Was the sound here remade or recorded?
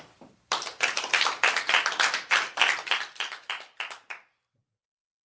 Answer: remade